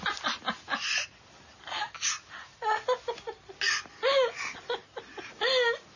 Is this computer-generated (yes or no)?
no